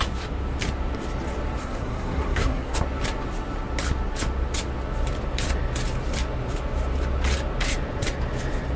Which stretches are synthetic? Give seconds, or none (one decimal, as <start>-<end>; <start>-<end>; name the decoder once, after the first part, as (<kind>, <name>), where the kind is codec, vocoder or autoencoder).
1.6-2.8 (codec, SNAC)